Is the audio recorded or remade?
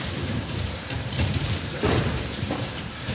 remade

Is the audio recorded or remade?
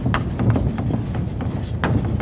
recorded